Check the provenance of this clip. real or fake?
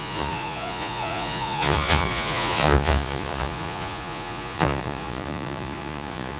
fake